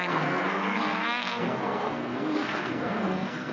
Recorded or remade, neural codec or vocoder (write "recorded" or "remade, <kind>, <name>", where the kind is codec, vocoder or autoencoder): remade, codec, SNAC